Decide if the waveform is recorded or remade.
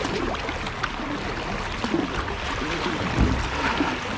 recorded